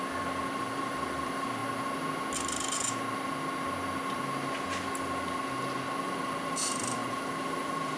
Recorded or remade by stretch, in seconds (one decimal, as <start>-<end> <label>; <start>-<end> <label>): 0.0-1.6 remade; 1.6-6.0 recorded; 6.0-8.0 remade